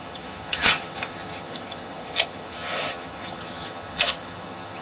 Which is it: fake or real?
fake